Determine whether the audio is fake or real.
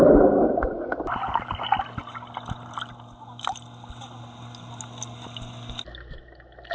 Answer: real